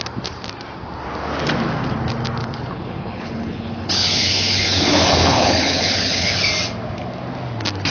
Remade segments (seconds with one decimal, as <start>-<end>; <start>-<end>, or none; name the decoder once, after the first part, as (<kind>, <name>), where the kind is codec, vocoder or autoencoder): 2.4-6.4 (codec, HILCodec)